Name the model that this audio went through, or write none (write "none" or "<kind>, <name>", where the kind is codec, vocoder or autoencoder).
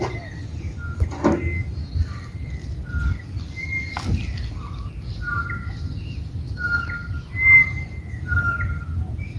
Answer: none